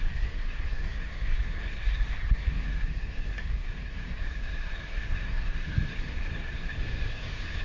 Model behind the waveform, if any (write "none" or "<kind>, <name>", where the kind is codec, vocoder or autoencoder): codec, SNAC